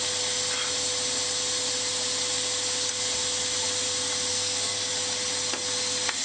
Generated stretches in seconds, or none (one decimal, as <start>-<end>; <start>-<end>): 4.3-4.9